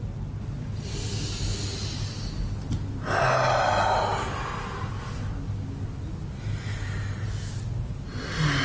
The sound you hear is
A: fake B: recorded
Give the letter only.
B